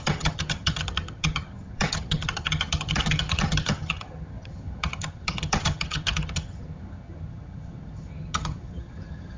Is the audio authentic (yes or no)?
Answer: no